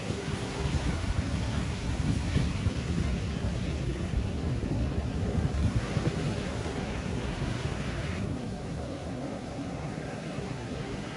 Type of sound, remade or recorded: remade